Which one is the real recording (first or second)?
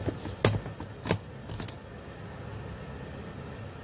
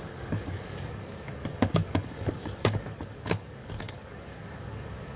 first